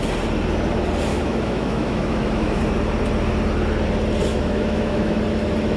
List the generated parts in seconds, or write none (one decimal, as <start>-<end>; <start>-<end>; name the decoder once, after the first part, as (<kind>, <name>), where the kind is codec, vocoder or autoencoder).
1.1-2.6 (autoencoder, DAC-VAE); 4.3-5.2